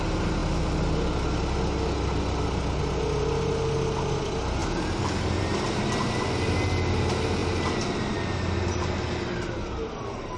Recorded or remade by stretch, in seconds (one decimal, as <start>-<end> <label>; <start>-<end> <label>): 0.0-7.4 recorded; 7.4-8.1 remade; 8.1-10.4 recorded